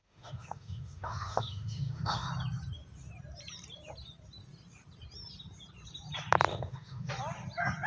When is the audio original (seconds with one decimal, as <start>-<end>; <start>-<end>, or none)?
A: 2.3-6.5; 7.1-7.9